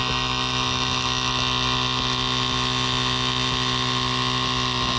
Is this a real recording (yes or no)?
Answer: yes